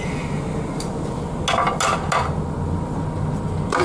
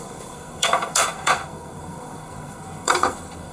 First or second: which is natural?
first